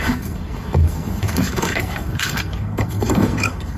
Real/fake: fake